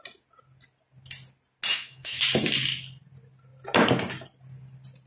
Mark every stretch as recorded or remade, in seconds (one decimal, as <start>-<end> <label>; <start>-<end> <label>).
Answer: 0.0-1.7 recorded; 1.7-2.2 remade; 2.2-5.1 recorded